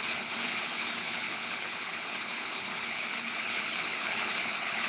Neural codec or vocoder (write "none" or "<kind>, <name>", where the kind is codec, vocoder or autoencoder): codec, HILCodec